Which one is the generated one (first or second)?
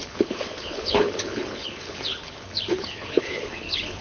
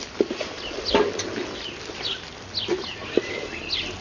first